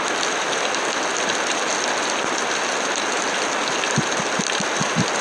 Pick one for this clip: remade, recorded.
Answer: recorded